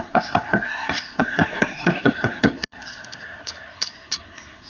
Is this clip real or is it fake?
fake